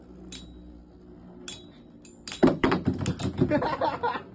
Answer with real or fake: real